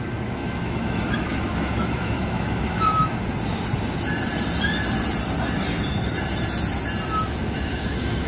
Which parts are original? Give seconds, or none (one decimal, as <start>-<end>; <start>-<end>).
3.0-7.2